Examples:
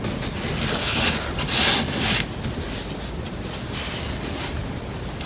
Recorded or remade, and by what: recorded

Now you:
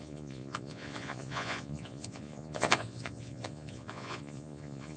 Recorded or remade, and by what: remade, vocoder, Vocos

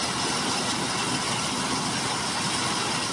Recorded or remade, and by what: recorded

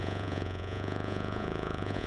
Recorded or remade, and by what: remade, vocoder, Vocos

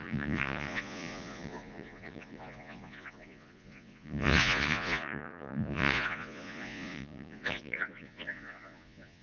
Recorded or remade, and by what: remade, vocoder, Vocos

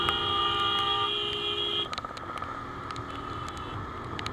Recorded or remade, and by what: recorded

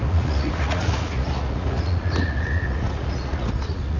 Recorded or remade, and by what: remade, vocoder, Vocos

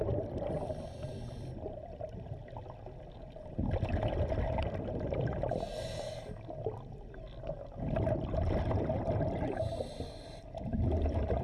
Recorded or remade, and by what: recorded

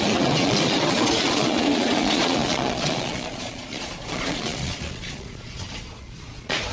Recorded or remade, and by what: remade, vocoder, Vocos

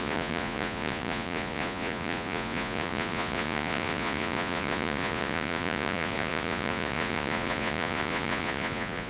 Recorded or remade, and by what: remade, vocoder, Vocos